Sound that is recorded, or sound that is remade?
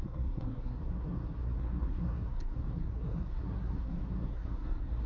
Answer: remade